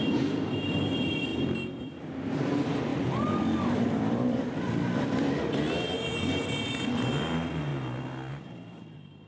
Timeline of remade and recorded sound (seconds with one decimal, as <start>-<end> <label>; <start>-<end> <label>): 0.0-1.3 remade; 1.3-1.8 recorded; 1.8-7.7 remade; 7.7-8.3 recorded; 8.3-9.3 remade